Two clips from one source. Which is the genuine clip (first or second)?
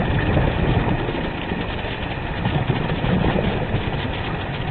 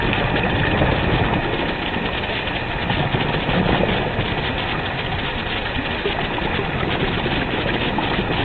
second